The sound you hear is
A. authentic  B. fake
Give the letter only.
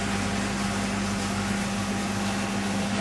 A